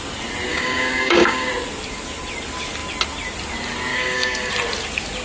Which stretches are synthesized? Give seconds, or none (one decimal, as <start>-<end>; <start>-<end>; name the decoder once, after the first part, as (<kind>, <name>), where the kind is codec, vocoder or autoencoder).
0.5-1.5 (codec, DAC); 3.9-4.5